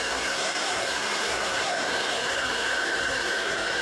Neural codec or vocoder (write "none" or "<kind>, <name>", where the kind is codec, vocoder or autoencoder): codec, SNAC